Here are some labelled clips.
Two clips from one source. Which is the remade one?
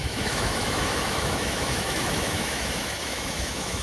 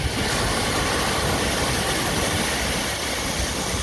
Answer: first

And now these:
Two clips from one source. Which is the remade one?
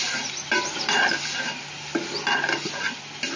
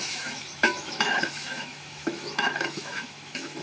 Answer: second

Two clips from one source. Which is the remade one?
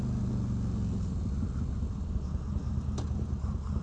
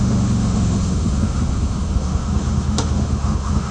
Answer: second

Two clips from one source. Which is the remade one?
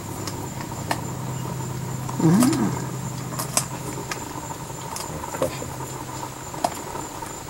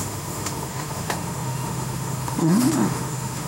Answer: second